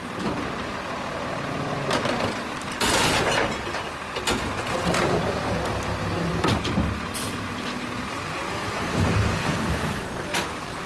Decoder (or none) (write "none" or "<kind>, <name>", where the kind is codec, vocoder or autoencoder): none